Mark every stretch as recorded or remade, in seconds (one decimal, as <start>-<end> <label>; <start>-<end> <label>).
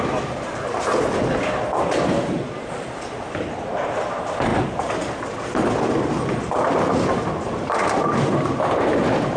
0.0-4.5 recorded; 4.5-6.3 remade; 6.3-9.4 recorded